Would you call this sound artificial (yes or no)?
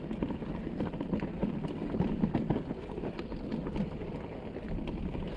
no